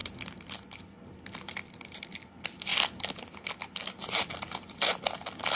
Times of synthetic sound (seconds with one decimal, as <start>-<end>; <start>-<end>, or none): 0.8-2.7; 4.9-5.5